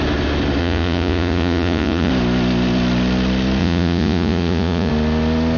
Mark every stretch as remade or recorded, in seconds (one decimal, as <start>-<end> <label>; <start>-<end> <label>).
0.0-0.6 recorded; 0.6-2.1 remade; 2.1-3.6 recorded; 3.6-4.9 remade; 4.9-5.6 recorded